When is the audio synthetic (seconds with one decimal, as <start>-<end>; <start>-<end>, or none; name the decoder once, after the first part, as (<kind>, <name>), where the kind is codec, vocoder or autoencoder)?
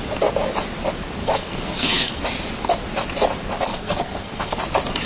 1.2-2.2 (codec, SNAC); 3.7-4.6